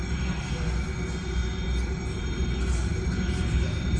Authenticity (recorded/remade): recorded